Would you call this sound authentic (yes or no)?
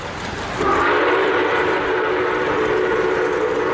yes